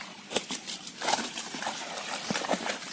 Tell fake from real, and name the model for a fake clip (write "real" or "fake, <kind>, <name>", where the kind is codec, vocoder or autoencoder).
fake, vocoder, BigVGAN v2